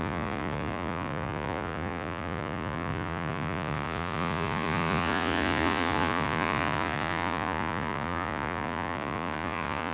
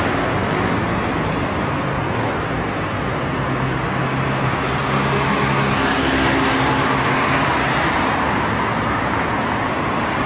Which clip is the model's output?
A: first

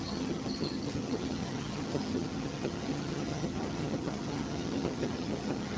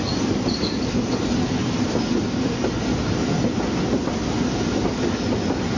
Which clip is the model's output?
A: first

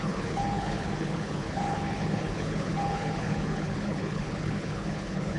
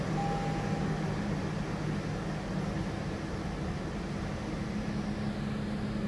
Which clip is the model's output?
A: first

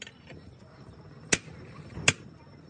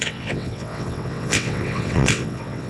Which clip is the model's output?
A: second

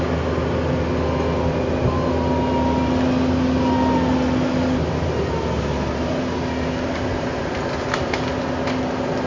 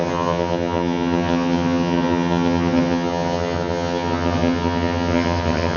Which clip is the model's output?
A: second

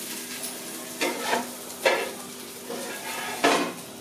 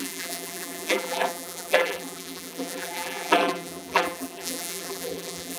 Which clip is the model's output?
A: second